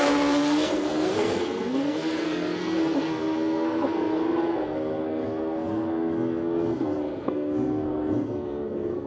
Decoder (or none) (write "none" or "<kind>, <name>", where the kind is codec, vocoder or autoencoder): codec, SNAC